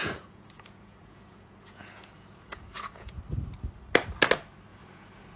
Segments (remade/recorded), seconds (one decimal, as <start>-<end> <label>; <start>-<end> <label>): 0.0-3.2 remade; 3.2-4.7 recorded; 4.7-5.4 remade